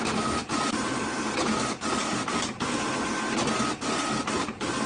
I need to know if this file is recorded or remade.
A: recorded